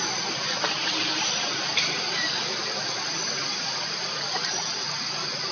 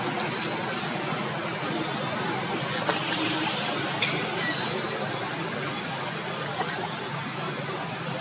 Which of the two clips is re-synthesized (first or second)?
first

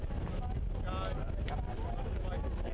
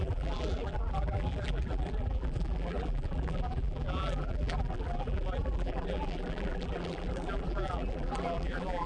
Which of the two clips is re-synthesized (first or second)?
second